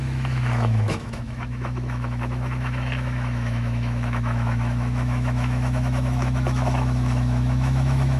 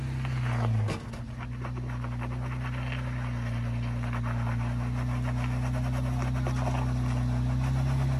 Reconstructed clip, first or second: first